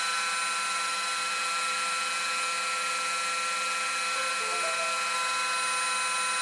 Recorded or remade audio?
recorded